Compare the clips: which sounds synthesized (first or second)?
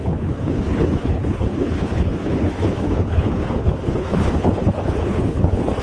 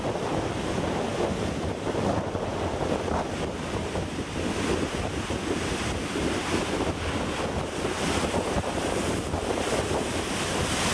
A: first